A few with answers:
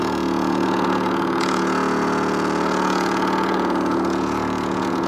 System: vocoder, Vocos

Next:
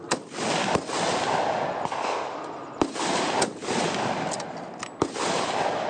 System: none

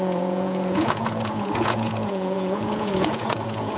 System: vocoder, Vocos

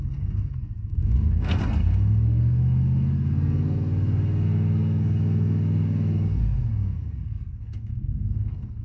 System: codec, SNAC